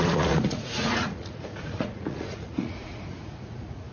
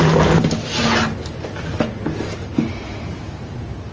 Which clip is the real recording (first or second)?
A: second